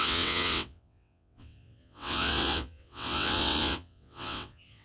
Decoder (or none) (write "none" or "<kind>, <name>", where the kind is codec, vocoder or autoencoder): vocoder, WaveNeXt